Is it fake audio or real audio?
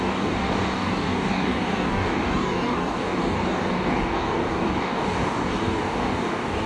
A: fake